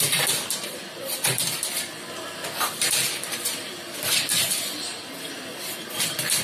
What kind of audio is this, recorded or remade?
remade